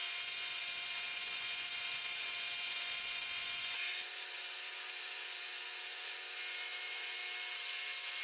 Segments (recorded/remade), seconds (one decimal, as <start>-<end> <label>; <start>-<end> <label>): 0.0-7.2 remade; 7.2-8.2 recorded